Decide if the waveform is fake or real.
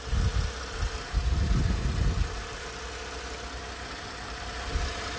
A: real